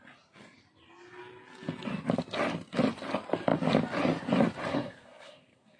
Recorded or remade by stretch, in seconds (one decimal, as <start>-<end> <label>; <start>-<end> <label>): 0.0-4.7 recorded; 4.7-5.8 remade